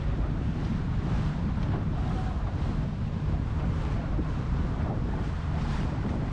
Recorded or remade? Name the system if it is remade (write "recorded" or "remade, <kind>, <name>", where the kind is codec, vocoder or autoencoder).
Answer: remade, vocoder, BigVGAN v2